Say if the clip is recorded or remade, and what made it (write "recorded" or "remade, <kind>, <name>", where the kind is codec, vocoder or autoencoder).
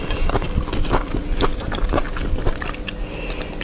recorded